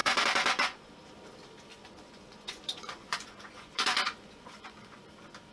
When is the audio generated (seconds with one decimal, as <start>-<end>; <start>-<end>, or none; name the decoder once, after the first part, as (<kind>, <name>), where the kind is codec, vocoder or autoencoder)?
0.0-0.9 (vocoder, Vocos); 1.7-5.0